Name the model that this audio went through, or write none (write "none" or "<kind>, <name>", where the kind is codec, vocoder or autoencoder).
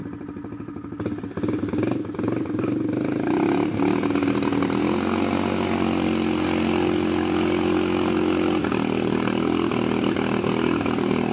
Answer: none